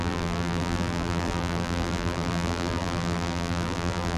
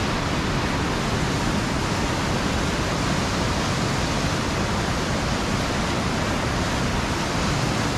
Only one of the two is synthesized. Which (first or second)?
first